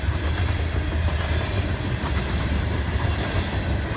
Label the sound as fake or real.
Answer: real